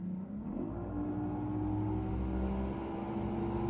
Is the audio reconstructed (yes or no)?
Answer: no